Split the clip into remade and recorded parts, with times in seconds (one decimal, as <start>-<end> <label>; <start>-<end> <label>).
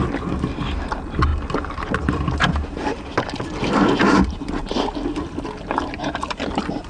0.0-6.9 recorded